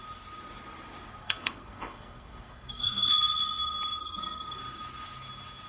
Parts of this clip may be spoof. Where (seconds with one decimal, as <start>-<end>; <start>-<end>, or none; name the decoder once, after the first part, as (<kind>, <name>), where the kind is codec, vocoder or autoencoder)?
1.2-3.1 (codec, SNAC); 4.0-4.6